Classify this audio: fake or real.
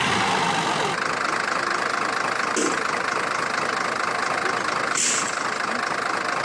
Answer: real